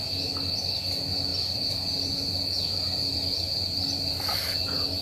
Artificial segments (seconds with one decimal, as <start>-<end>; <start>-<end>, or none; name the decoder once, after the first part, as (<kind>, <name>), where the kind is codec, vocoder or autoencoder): 1.3-2.1 (vocoder, BigVGAN v2)